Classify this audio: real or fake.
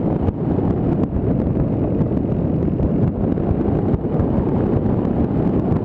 real